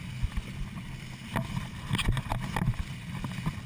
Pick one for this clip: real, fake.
real